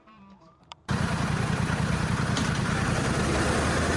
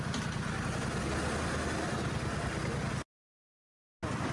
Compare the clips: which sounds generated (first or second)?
first